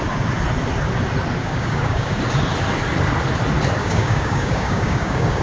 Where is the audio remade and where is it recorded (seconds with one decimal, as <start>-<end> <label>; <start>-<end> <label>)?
0.0-1.4 recorded; 1.4-2.2 remade; 2.2-3.8 recorded; 3.8-5.4 remade